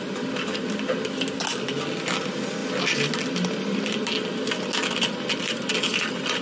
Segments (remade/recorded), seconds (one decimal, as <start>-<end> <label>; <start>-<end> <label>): 0.0-6.4 recorded